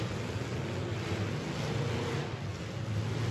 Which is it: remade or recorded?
recorded